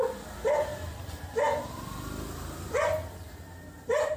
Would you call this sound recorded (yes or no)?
no